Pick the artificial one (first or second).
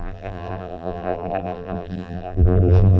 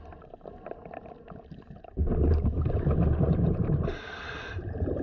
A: first